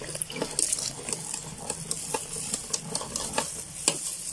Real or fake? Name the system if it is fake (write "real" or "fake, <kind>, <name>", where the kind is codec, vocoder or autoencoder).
real